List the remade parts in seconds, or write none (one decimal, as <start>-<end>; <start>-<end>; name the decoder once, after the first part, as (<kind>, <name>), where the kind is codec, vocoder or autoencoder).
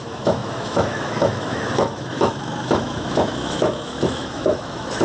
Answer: 0.0-5.0 (autoencoder, DAC-VAE)